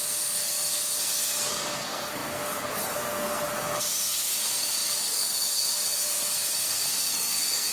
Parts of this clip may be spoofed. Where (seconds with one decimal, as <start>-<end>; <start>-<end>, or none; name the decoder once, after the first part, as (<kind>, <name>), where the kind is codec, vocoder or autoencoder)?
0.0-7.7 (codec, SNAC)